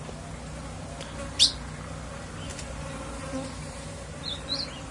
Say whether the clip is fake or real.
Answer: real